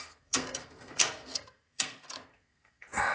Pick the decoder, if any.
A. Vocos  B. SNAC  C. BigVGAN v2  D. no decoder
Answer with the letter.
B